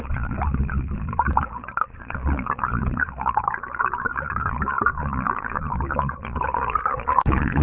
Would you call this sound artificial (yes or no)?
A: yes